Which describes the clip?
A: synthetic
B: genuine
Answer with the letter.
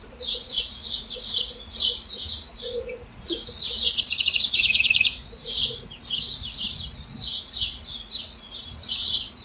A